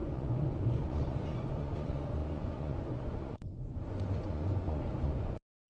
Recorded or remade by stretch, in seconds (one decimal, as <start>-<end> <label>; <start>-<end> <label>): 0.0-5.7 remade